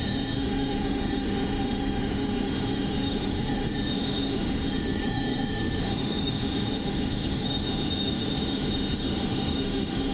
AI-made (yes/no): yes